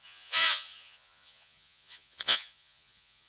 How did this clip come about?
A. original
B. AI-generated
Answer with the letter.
B